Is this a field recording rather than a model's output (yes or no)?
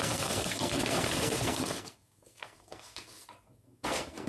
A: no